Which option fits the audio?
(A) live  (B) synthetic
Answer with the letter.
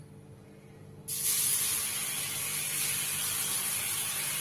A